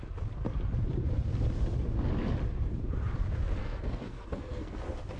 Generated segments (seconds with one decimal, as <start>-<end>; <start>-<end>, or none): 3.6-4.8